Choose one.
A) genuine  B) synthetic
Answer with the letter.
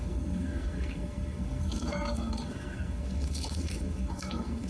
B